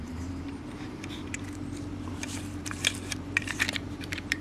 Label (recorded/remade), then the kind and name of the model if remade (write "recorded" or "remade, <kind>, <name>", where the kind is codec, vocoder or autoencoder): remade, vocoder, BigVGAN v2